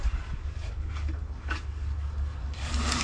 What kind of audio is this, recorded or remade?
remade